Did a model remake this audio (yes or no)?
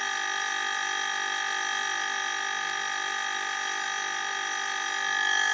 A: no